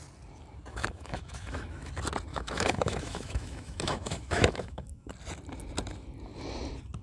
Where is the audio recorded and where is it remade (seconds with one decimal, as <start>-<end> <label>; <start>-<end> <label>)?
0.0-0.7 recorded; 0.7-1.9 remade; 1.9-2.3 recorded; 2.3-5.1 remade; 5.1-7.0 recorded